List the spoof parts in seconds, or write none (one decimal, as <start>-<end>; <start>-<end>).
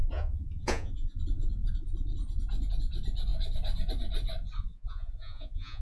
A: 0.0-1.2; 4.7-5.8